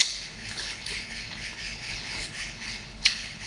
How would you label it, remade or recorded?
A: remade